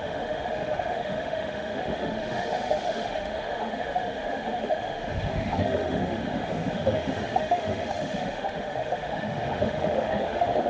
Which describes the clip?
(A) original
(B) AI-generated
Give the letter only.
B